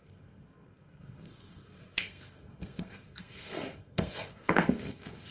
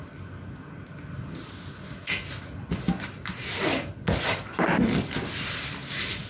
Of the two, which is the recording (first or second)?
second